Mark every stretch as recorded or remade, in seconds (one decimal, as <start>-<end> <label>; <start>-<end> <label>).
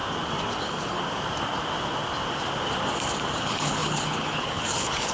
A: 0.0-0.6 recorded; 0.6-1.0 remade; 1.0-3.4 recorded; 3.4-5.1 remade